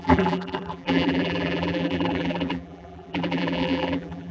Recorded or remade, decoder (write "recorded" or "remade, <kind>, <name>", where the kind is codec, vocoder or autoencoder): remade, vocoder, BigVGAN v2